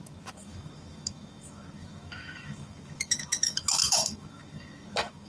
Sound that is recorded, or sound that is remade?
remade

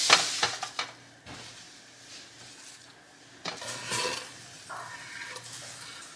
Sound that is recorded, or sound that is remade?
recorded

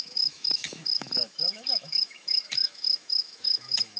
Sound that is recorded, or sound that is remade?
remade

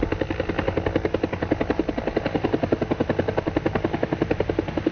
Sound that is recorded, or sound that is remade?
recorded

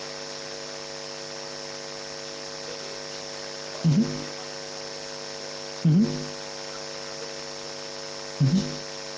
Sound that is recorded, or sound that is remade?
recorded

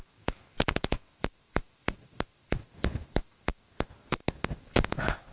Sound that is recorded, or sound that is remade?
remade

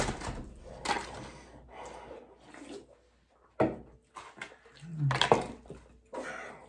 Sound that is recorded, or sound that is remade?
recorded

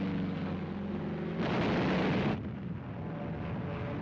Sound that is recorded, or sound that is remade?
recorded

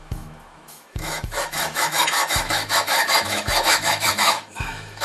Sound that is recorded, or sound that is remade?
remade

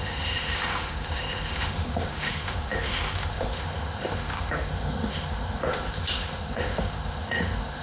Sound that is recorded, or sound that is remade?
remade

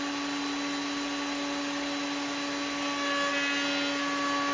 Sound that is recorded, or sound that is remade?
recorded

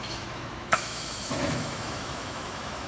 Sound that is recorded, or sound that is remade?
remade